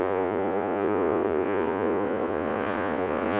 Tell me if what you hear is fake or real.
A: fake